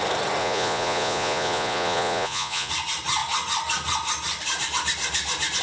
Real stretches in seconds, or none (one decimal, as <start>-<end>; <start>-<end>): 0.0-0.4; 2.7-5.6